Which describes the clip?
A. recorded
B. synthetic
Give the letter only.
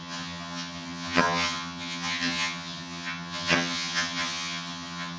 B